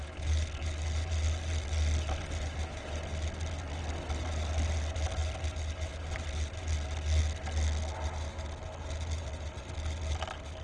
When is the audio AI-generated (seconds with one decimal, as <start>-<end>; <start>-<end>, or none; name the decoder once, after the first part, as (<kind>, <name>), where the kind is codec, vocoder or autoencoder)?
none